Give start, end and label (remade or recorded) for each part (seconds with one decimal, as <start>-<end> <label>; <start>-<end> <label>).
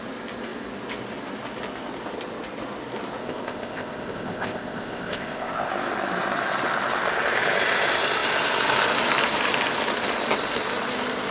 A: 0.0-3.2 recorded; 3.2-5.7 remade; 5.7-11.3 recorded